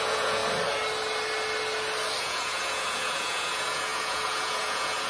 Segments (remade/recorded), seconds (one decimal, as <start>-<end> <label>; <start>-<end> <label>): 0.0-0.4 remade; 0.4-2.2 recorded; 2.2-5.1 remade